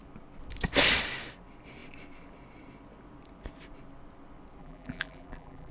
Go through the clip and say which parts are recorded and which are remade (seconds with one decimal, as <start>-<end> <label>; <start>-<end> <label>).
0.0-4.6 recorded; 4.6-5.7 remade